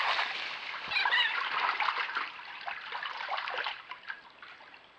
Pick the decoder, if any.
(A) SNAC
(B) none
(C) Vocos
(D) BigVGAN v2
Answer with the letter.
D